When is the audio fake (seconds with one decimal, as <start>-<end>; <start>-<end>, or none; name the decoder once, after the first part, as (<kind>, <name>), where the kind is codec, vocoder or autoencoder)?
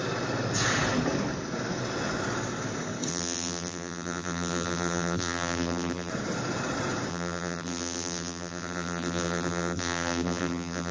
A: 3.1-6.1 (vocoder, BigVGAN v2); 7.1-10.9